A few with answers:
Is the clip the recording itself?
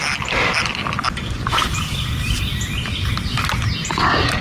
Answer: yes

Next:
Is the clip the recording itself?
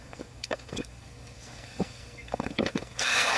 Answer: no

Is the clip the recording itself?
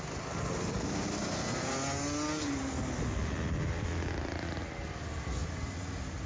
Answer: yes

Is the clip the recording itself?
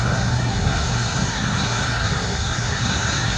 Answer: no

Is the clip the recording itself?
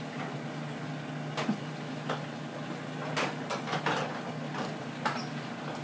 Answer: yes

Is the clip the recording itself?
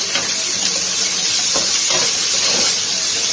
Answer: yes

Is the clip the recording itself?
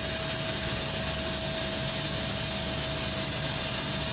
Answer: yes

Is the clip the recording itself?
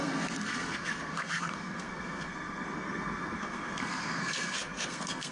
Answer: no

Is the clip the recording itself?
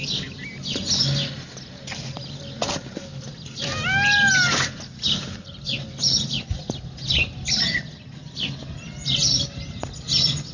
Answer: yes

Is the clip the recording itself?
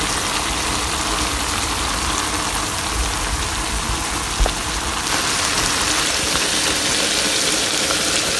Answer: yes